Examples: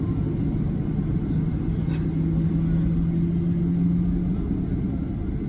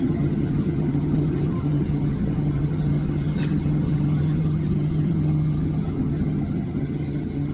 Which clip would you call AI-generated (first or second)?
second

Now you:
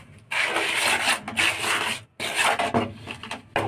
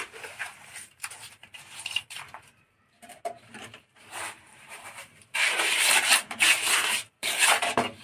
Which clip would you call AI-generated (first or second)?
second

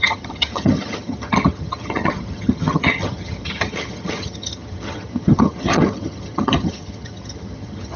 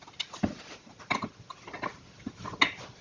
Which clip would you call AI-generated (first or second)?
first